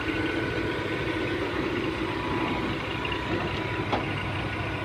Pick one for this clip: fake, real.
real